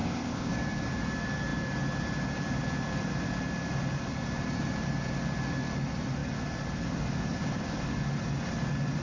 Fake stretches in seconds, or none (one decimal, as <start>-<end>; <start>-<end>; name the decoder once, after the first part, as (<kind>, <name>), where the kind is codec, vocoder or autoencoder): 0.0-0.5 (codec, ZipCodec)